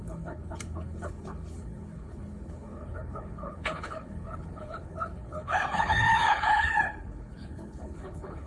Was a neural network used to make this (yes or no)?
yes